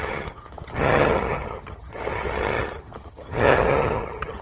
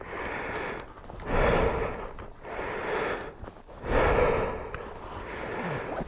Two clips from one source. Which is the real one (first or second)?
second